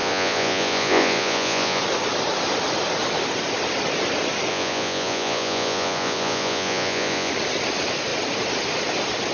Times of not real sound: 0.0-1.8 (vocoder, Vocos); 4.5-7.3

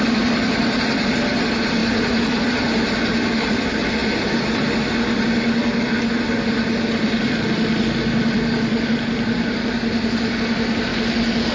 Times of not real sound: none

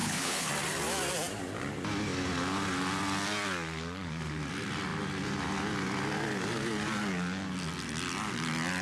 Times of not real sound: 0.0-0.5 (codec, HILCodec)

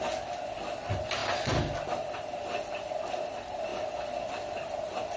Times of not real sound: none

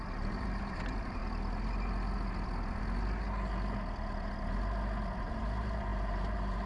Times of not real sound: 0.0-1.2 (vocoder, BigVGAN v2); 5.2-6.7

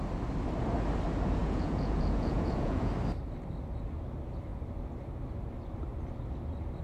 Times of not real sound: 1.4-2.9 (vocoder, Vocos)

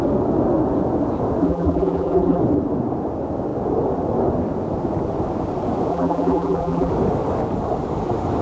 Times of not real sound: 1.4-2.4 (vocoder, BigVGAN v2); 5.9-6.9